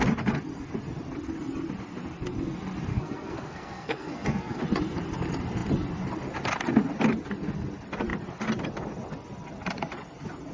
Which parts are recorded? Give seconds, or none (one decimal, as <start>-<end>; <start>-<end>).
0.0-2.9; 4.6-10.5